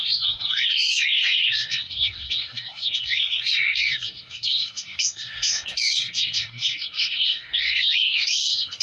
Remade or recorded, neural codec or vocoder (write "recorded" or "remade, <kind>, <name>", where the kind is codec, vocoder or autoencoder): remade, codec, SNAC